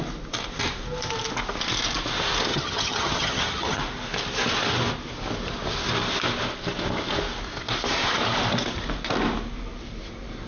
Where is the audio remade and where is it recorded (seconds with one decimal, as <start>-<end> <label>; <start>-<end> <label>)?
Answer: 0.0-2.5 recorded; 2.5-3.8 remade; 3.8-10.5 recorded